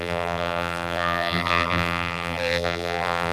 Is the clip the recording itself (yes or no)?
no